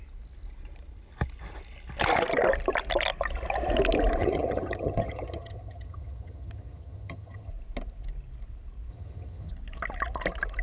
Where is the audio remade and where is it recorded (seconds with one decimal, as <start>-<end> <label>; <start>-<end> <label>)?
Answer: 0.0-4.2 recorded; 4.2-7.5 remade; 7.5-8.9 recorded; 8.9-9.5 remade; 9.5-10.6 recorded